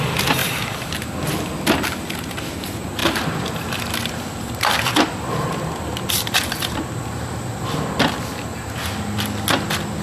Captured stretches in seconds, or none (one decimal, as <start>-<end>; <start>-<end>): 0.0-0.4; 1.6-3.0; 7.6-10.0